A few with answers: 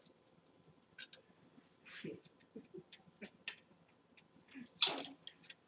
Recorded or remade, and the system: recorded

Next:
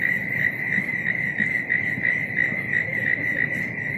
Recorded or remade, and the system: recorded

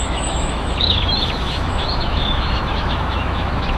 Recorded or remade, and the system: remade, autoencoder, DAC-VAE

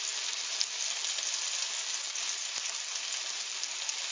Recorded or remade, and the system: recorded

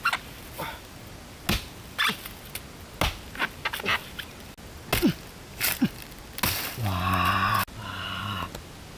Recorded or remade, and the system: recorded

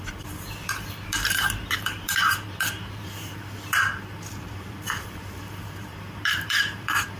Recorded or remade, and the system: remade, vocoder, BigVGAN v2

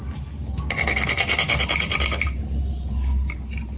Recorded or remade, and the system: recorded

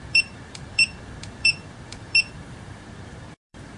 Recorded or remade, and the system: remade, vocoder, BigVGAN v2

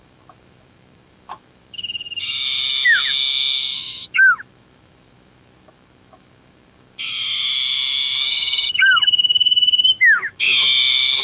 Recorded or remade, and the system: remade, autoencoder, DAC-VAE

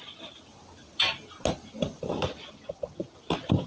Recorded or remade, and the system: recorded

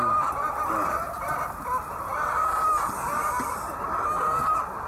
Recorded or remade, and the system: recorded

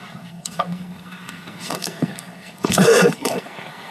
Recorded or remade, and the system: remade, codec, SNAC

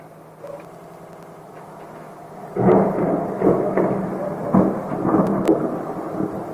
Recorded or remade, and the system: recorded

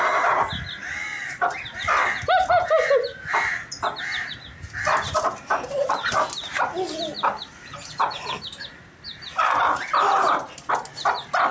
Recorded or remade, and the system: recorded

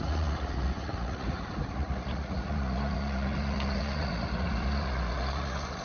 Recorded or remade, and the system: remade, vocoder, Vocos